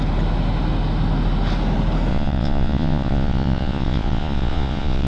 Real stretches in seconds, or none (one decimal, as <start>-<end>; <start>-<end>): 0.0-2.1